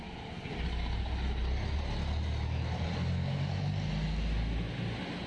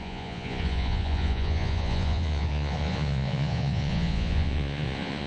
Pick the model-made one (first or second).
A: second